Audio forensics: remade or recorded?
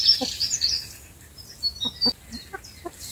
recorded